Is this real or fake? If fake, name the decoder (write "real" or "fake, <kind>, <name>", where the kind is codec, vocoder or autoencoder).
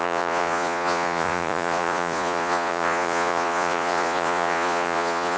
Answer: fake, vocoder, Vocos